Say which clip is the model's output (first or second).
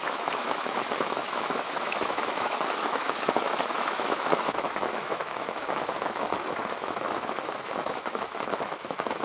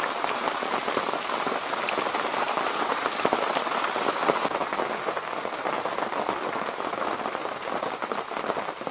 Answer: first